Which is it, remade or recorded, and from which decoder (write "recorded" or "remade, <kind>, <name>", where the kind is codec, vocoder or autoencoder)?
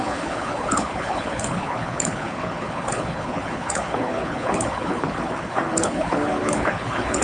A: remade, codec, HILCodec